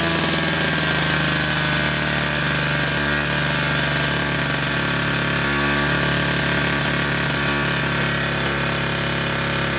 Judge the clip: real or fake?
real